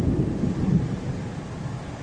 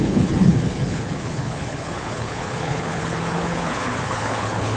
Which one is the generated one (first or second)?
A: second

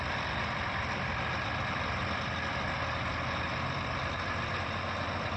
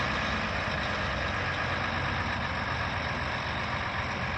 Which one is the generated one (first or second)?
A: first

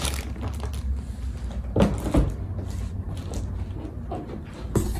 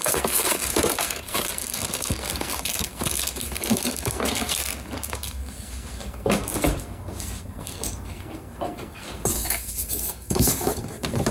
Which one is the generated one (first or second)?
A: second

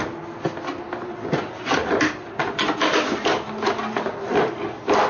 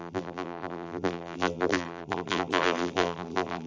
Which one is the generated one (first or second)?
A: second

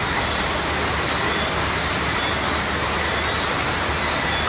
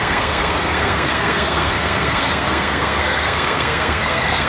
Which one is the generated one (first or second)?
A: second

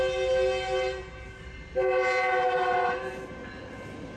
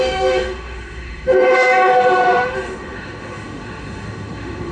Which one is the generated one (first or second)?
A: second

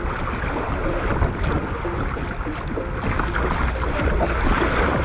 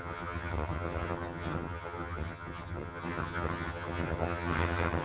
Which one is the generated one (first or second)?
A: second